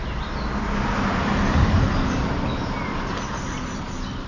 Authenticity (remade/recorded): recorded